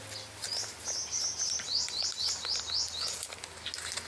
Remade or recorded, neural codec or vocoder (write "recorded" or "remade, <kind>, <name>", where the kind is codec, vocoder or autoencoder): recorded